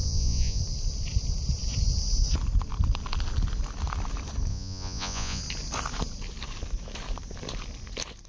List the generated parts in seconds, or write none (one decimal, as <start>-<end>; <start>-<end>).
0.0-0.6; 4.5-5.4